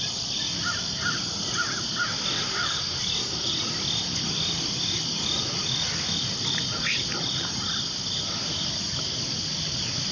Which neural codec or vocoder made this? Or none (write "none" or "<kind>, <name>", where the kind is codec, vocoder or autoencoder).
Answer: none